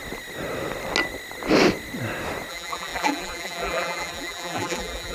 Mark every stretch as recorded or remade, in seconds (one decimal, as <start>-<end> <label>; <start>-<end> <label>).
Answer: 0.0-2.5 recorded; 2.5-5.1 remade